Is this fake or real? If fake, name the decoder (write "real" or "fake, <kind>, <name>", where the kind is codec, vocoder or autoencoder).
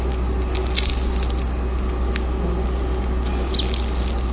real